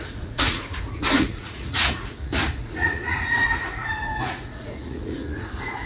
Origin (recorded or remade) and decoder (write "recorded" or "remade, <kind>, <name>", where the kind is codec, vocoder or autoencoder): remade, vocoder, Vocos